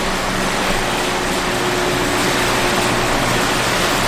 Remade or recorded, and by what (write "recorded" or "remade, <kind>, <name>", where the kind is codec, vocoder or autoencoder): recorded